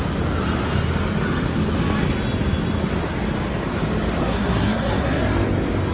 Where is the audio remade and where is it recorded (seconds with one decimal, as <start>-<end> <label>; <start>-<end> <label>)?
0.0-4.2 recorded; 4.2-5.2 remade; 5.2-5.9 recorded